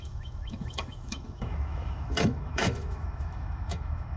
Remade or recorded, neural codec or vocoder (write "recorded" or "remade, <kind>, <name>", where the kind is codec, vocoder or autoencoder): remade, autoencoder, DAC-VAE